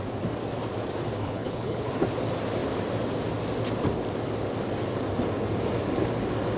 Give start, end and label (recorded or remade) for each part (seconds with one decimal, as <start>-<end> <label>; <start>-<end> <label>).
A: 0.0-1.2 recorded; 1.2-1.9 remade; 1.9-6.6 recorded